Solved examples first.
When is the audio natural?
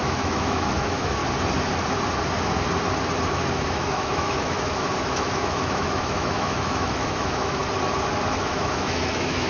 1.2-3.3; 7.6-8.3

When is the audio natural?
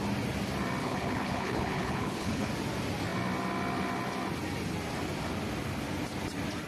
0.0-0.8; 2.5-6.7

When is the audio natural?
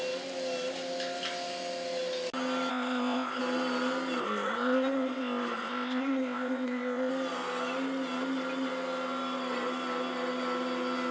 0.0-2.7; 3.4-4.2; 7.1-11.1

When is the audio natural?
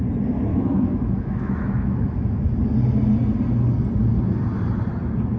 0.0-0.5; 2.4-5.4